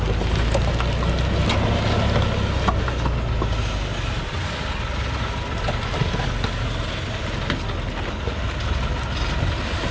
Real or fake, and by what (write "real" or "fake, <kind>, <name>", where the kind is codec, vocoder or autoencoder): real